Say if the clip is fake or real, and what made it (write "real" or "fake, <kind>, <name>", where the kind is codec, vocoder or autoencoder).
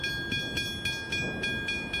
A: real